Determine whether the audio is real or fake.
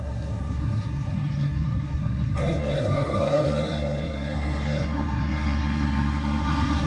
fake